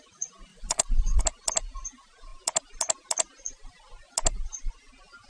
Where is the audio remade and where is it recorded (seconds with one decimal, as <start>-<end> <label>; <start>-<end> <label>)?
0.0-0.5 recorded; 0.5-1.2 remade; 1.2-5.3 recorded